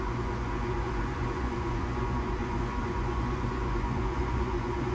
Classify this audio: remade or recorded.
remade